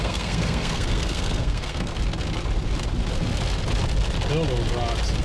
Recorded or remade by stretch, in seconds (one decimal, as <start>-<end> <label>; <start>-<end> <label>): 0.0-1.9 remade; 1.9-5.2 recorded

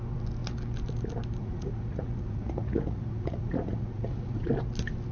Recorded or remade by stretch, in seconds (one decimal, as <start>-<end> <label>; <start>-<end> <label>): 0.0-1.4 recorded; 1.4-4.5 remade; 4.5-5.1 recorded

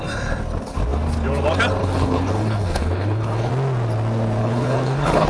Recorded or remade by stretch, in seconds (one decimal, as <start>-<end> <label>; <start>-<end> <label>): 0.0-1.8 recorded; 1.8-3.5 remade; 3.5-4.4 recorded; 4.4-5.3 remade